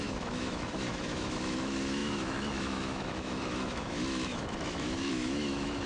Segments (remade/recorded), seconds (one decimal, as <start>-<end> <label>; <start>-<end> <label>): 0.0-5.9 remade